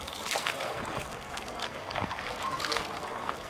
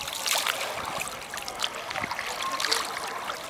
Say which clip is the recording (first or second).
second